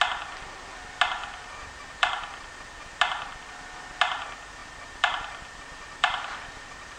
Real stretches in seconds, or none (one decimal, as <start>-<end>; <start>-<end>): 0.0-1.2; 2.9-4.6